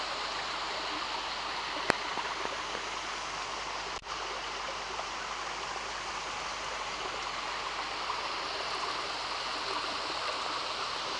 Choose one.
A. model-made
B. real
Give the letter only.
B